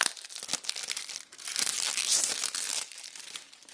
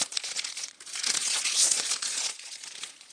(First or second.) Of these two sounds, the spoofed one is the second